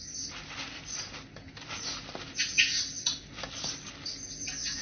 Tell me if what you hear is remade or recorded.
recorded